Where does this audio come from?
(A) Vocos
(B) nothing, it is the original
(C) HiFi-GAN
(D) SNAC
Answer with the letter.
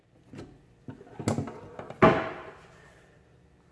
B